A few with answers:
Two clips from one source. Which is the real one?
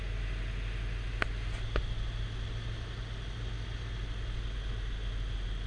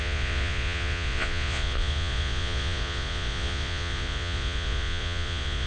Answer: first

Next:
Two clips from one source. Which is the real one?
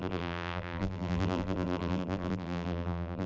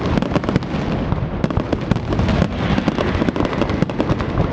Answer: second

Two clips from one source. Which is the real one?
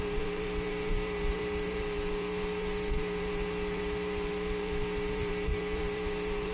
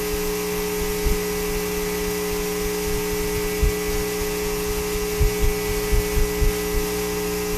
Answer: second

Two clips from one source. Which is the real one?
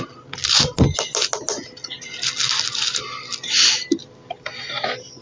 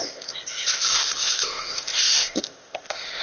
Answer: first